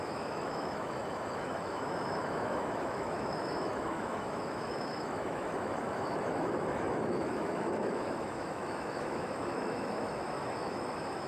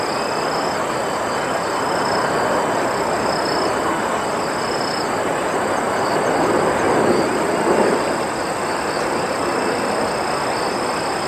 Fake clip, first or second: first